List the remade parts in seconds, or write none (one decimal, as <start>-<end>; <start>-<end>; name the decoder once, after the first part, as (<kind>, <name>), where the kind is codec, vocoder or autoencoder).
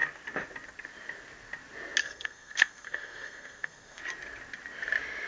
2.0-4.0 (codec, SNAC)